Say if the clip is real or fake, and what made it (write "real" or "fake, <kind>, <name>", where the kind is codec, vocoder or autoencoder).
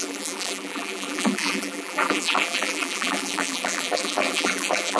fake, vocoder, BigVGAN v2